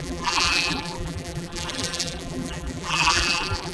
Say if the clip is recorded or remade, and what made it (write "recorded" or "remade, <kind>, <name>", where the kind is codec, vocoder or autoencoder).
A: remade, vocoder, BigVGAN v2